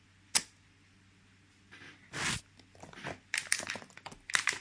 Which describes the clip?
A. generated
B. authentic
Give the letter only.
B